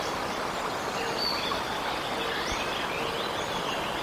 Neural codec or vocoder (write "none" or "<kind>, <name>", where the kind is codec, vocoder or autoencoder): none